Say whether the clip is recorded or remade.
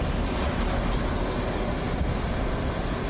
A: recorded